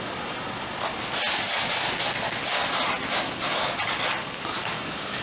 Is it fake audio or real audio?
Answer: real